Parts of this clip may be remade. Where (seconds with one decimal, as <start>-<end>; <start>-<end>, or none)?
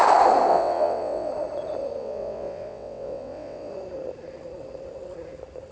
0.5-1.3; 2.0-3.7